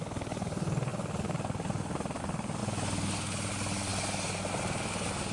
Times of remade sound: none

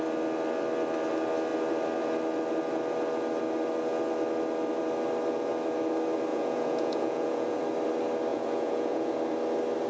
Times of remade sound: 6.3-7.6 (vocoder, Vocos); 8.3-9.2

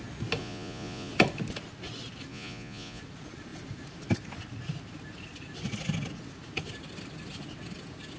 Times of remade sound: 0.4-1.1 (vocoder, Vocos); 2.3-3.0

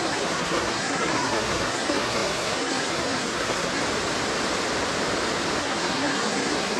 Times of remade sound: 0.0-3.8 (codec, SNAC); 5.6-6.8

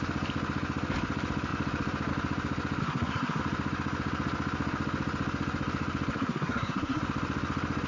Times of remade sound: 2.8-3.4 (codec, SNAC); 6.1-7.0

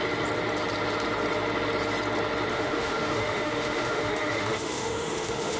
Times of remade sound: 2.5-5.6 (autoencoder, DAC-VAE)

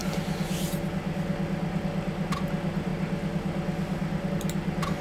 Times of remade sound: none